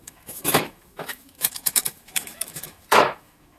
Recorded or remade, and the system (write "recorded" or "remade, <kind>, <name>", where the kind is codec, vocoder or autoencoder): remade, autoencoder, DAC-VAE